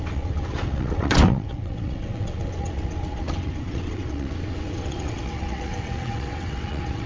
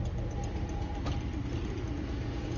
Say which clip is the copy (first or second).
first